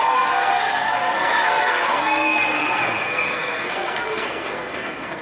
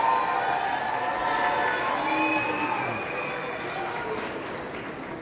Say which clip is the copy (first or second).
first